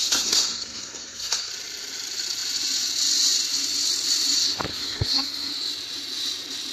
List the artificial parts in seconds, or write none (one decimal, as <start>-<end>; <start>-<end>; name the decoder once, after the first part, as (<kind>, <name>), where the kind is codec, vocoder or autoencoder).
0.0-1.5 (codec, SNAC); 4.7-5.5